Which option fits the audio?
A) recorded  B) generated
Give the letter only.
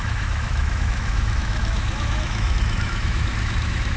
B